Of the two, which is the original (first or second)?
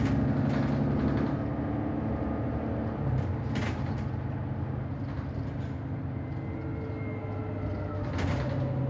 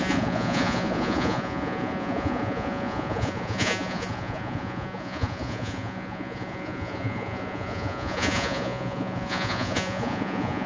first